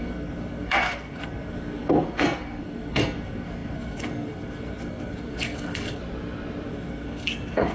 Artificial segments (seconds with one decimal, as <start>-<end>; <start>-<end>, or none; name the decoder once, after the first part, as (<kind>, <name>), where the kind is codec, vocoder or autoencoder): 0.0-6.0 (codec, SNAC); 6.7-7.7